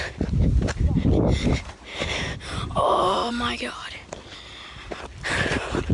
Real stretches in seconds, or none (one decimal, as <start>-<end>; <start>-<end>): 0.0-1.3; 3.3-5.9